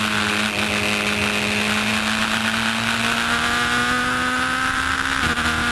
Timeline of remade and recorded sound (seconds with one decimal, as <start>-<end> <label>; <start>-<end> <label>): 0.0-5.7 recorded